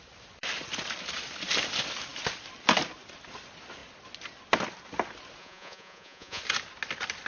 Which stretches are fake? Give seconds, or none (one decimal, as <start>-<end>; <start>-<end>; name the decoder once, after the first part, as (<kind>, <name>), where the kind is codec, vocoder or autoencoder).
5.4-6.4 (vocoder, Vocos)